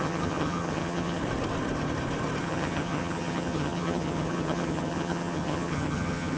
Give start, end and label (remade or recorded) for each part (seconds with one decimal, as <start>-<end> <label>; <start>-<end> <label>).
0.0-1.2 remade; 1.2-2.4 recorded; 2.4-6.4 remade